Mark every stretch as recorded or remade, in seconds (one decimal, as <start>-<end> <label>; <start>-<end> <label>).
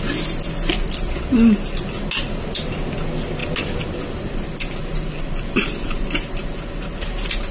0.0-7.5 recorded